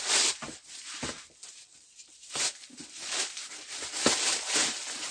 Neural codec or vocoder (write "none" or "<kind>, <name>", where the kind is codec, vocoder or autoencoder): none